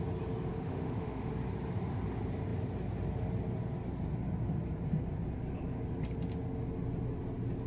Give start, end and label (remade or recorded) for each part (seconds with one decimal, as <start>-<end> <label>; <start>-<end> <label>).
0.0-0.5 recorded; 0.5-1.3 remade; 1.3-7.7 recorded